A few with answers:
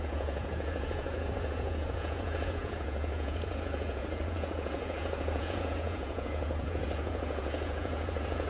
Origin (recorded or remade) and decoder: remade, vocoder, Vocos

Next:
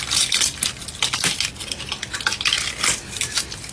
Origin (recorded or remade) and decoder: recorded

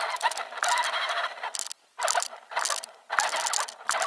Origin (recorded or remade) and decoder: recorded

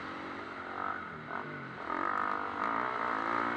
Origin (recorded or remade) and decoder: recorded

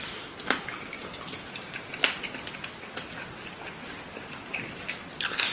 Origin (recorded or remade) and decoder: recorded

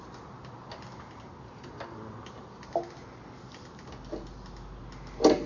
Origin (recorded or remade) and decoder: recorded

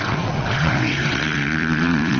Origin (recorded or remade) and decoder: remade, vocoder, WaveNeXt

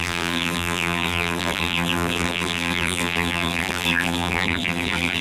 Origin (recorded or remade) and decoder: remade, vocoder, BigVGAN v2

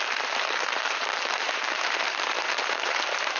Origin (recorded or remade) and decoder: remade, vocoder, BigVGAN v2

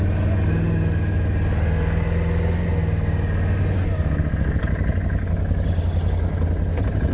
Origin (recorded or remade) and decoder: recorded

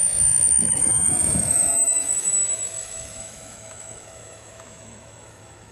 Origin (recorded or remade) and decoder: remade, autoencoder, DAC-VAE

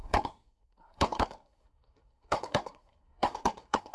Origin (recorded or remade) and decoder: remade, codec, SNAC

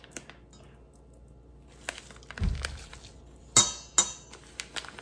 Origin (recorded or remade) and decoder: recorded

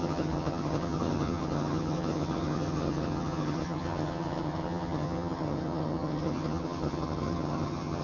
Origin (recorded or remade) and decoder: remade, vocoder, HiFi-GAN